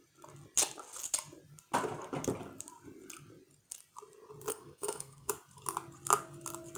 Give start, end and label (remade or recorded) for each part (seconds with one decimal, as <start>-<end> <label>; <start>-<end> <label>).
0.0-4.5 recorded; 4.5-5.3 remade; 5.3-6.8 recorded